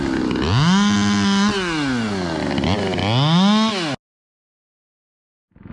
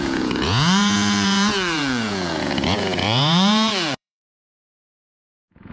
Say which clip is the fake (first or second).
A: second